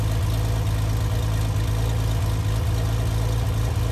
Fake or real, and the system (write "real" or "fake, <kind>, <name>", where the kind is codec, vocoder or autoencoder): real